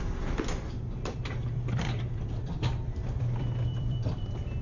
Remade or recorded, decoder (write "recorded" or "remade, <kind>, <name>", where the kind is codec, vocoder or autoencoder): remade, vocoder, BigVGAN v2